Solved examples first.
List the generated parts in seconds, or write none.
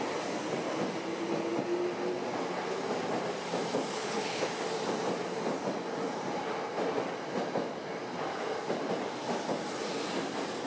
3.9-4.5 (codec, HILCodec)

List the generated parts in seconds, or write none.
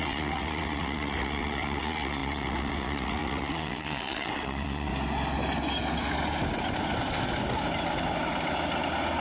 0.0-4.9 (vocoder, WaveNeXt)